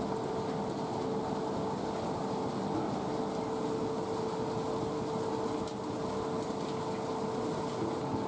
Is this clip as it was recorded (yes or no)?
yes